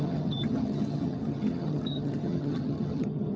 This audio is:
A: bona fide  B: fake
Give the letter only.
B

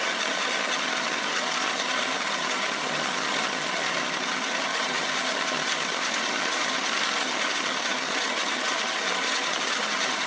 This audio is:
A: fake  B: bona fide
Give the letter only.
A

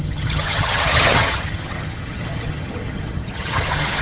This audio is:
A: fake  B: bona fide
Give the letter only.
A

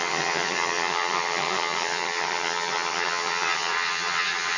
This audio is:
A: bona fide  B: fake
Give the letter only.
B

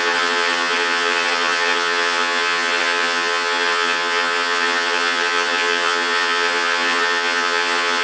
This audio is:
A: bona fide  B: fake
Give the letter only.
B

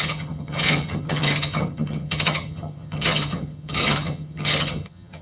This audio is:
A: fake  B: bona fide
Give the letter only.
A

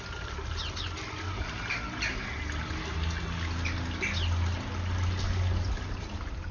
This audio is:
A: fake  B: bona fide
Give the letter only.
B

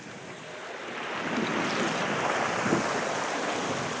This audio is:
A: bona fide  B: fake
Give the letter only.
A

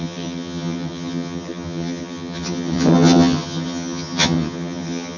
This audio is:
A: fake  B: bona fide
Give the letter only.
A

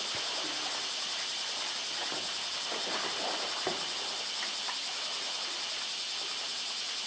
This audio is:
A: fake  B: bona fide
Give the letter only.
B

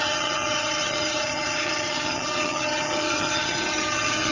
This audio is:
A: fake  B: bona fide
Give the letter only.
A